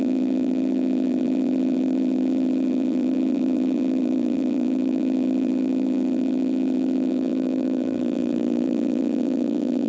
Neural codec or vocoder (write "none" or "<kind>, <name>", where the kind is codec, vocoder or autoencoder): vocoder, BigVGAN v2